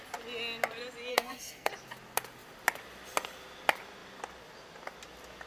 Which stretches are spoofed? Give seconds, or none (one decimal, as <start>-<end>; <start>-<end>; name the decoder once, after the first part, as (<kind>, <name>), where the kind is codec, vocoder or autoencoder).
1.1-1.7 (codec, SNAC)